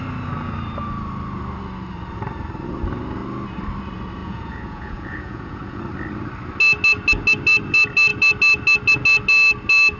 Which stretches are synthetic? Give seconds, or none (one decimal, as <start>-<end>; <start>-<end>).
4.2-5.8